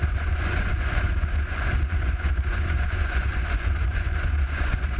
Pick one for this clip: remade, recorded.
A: remade